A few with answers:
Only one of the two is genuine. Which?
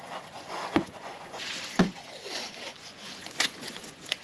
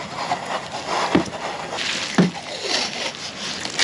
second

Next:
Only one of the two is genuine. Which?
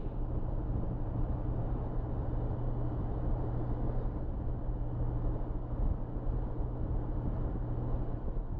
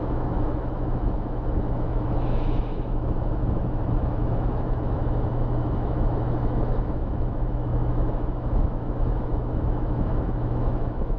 first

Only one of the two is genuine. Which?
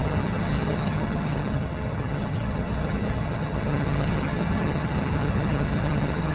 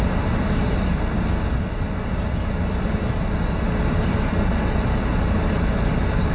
second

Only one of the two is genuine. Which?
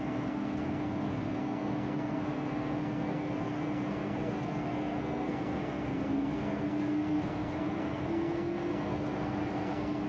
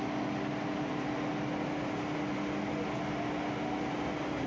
second